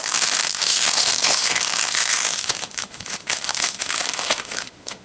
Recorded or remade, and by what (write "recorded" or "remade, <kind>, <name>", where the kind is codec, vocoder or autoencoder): remade, autoencoder, DAC-VAE